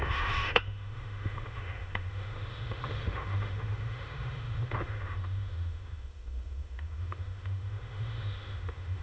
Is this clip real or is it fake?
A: fake